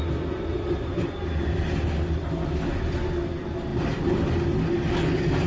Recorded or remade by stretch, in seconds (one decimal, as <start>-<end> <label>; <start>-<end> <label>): 0.0-5.5 recorded